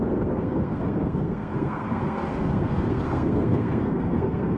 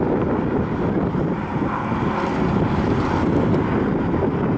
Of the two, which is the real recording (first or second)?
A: second